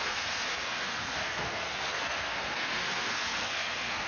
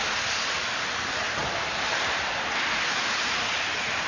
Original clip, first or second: second